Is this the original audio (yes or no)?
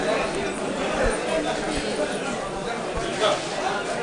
yes